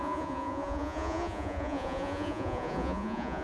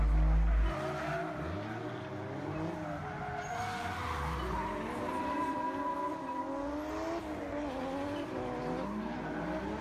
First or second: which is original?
second